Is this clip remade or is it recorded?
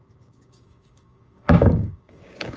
remade